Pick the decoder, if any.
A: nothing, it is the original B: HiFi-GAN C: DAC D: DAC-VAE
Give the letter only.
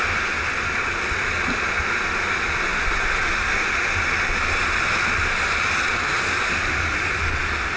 A